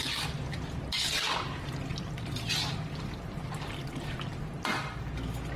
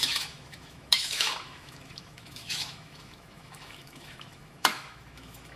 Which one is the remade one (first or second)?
second